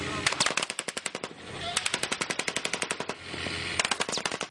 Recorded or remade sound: recorded